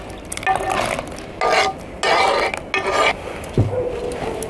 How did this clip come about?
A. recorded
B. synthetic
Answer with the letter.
A